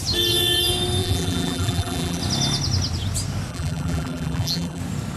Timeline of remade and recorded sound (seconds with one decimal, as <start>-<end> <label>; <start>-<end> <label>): 0.0-1.0 recorded; 1.0-2.2 remade; 2.2-3.5 recorded; 3.5-4.8 remade; 4.8-5.2 recorded